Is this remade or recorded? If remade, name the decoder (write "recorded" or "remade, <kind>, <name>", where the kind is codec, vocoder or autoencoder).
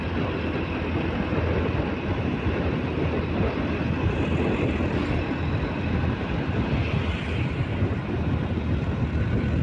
recorded